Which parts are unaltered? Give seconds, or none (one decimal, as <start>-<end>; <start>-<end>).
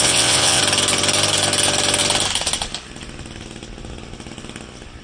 0.6-5.0